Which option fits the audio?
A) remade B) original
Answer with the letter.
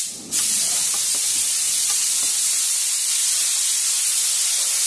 B